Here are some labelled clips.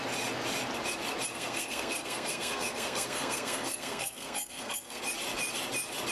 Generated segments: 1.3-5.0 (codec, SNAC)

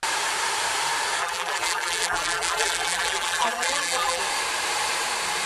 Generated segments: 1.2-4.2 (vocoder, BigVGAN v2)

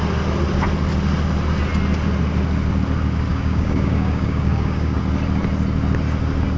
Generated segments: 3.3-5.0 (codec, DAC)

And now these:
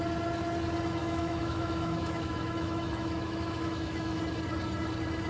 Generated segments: 1.0-4.2 (autoencoder, DAC-VAE)